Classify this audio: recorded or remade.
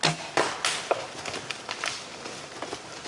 recorded